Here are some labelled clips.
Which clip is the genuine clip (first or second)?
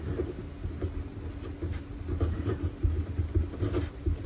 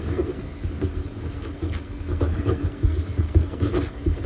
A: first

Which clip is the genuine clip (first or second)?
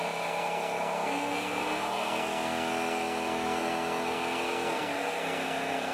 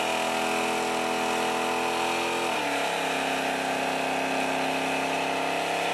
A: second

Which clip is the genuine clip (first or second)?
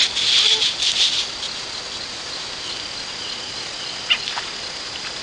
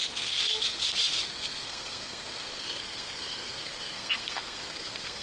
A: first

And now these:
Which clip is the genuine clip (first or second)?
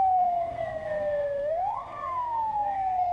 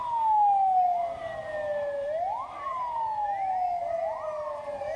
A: second